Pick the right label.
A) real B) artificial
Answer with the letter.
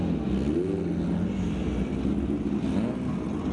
A